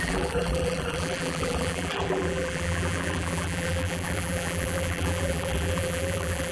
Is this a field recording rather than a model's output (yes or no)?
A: no